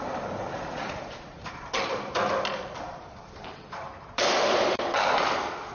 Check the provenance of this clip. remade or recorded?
remade